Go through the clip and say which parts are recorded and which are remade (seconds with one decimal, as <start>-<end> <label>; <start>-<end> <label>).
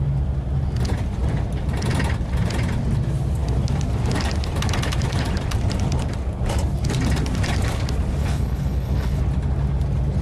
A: 0.0-8.2 recorded; 8.2-9.2 remade; 9.2-10.2 recorded